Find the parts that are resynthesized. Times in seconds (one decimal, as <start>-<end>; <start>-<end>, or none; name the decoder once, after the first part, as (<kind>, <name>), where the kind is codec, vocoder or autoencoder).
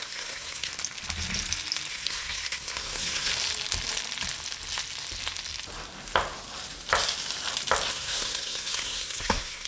0.0-0.7 (codec, SNAC); 1.9-3.3; 7.9-9.7